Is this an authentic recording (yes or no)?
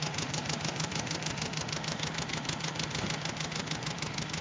no